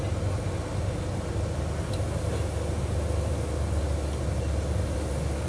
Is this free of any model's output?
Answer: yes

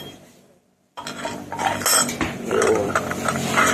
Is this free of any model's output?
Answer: yes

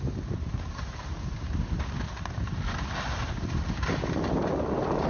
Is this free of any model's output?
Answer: yes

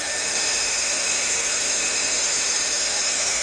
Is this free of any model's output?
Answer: no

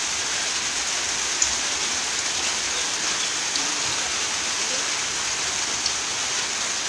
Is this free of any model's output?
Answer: yes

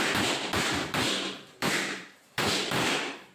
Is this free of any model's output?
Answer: no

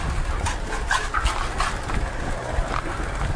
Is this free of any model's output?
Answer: yes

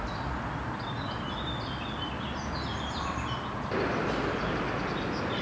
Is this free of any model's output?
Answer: yes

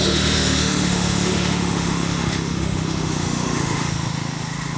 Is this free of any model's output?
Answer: no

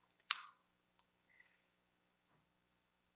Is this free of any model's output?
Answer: no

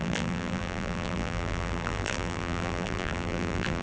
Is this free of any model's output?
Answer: no